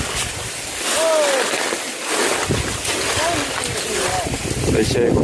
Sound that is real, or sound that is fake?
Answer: real